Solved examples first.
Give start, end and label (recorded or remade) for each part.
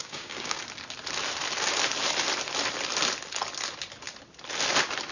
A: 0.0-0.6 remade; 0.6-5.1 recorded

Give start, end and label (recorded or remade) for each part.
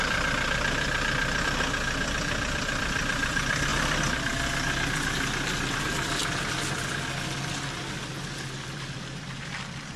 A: 0.0-3.7 remade; 3.7-5.8 recorded; 5.8-10.0 remade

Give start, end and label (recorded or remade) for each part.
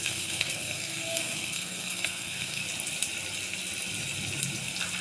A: 0.0-2.6 remade; 2.6-5.0 recorded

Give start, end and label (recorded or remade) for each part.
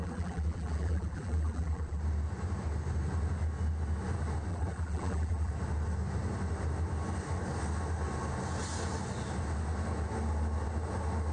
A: 0.0-2.0 remade; 2.0-4.5 recorded; 4.5-5.5 remade; 5.5-11.3 recorded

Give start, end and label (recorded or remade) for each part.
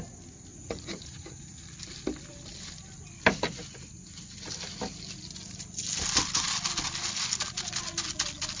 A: 0.0-0.5 recorded; 0.5-1.6 remade; 1.6-8.6 recorded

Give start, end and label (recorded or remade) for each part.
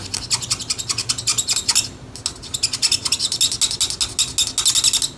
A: 0.0-5.2 recorded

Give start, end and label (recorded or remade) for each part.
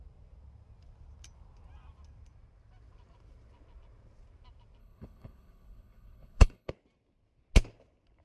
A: 0.0-4.8 recorded; 4.8-6.7 remade; 6.7-8.2 recorded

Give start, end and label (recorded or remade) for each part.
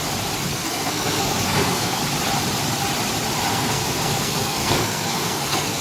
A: 0.0-0.5 recorded; 0.5-2.0 remade; 2.0-3.5 recorded; 3.5-5.8 remade